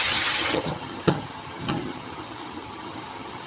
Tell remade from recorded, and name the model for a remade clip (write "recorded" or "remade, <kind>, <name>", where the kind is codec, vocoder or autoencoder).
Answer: remade, vocoder, HiFi-GAN